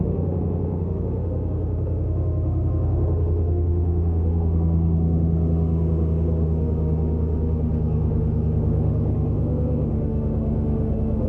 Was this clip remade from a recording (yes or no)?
yes